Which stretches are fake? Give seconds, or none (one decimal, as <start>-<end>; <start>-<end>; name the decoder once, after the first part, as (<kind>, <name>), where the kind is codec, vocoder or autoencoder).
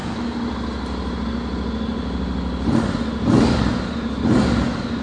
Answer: none